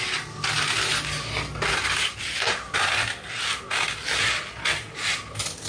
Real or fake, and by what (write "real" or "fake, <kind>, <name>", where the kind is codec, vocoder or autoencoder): real